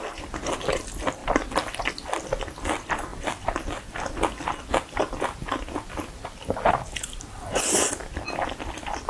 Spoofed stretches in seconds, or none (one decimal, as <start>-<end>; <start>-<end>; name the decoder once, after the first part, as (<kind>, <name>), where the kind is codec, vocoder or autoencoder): none